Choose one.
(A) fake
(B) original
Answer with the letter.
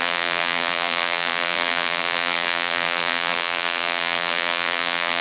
A